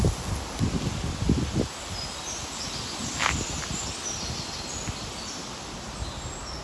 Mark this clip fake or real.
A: real